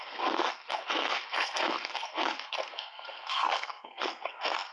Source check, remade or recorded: remade